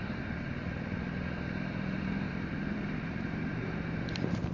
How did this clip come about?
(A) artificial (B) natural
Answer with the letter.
A